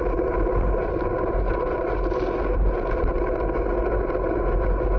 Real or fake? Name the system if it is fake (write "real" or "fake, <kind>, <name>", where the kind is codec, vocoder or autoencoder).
fake, vocoder, BigVGAN v2